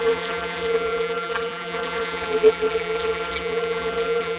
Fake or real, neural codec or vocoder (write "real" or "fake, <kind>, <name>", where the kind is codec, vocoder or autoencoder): fake, vocoder, BigVGAN v2